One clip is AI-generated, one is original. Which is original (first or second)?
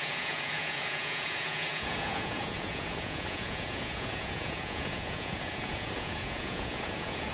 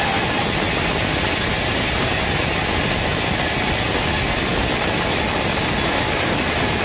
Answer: second